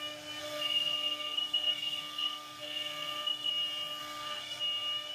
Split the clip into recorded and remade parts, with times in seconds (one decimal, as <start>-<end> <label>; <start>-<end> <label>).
0.0-0.4 recorded; 0.4-3.5 remade; 3.5-4.0 recorded; 4.0-4.6 remade; 4.6-5.1 recorded